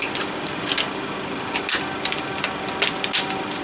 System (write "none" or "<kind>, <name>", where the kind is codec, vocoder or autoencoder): none